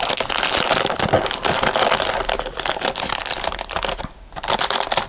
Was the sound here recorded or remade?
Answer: recorded